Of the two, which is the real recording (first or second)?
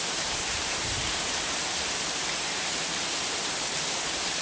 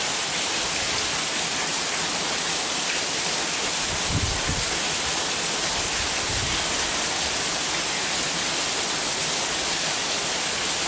second